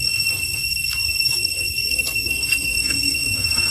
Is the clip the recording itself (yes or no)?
no